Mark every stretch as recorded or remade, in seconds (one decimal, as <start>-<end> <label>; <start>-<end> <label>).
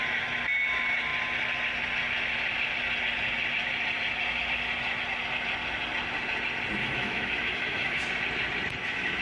0.0-6.8 recorded; 6.8-8.0 remade; 8.0-9.2 recorded